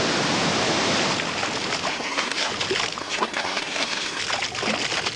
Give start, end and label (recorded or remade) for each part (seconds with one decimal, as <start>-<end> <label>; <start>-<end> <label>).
0.0-1.9 recorded; 1.9-2.5 remade; 2.5-3.0 recorded; 3.0-4.2 remade; 4.2-5.2 recorded